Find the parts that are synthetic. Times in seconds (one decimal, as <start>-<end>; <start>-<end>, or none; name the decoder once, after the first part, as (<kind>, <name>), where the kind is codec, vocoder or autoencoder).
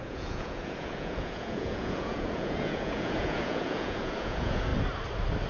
0.0-4.7 (vocoder, Vocos)